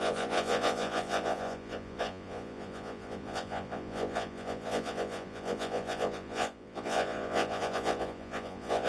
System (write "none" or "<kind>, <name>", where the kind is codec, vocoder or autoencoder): vocoder, Vocos